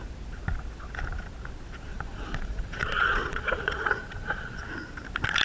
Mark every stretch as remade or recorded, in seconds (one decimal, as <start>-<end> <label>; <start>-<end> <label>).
0.0-1.9 recorded; 1.9-4.6 remade; 4.6-5.4 recorded